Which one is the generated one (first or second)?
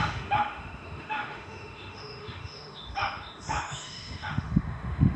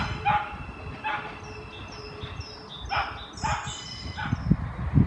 first